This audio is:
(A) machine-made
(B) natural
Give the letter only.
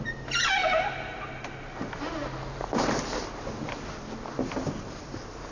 B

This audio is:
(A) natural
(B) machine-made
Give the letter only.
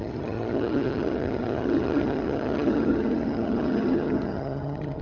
B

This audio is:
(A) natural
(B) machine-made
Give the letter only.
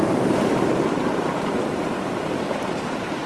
B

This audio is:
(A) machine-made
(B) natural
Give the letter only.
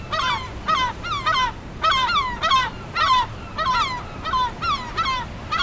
B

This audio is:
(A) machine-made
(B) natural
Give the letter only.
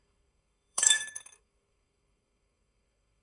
A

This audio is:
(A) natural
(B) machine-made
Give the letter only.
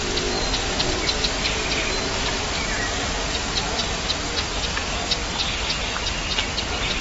A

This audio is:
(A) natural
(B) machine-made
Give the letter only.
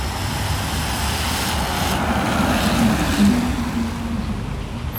A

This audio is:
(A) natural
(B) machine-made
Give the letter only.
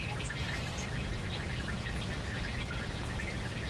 A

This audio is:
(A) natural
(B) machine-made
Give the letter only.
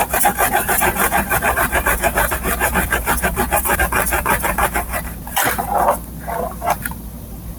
B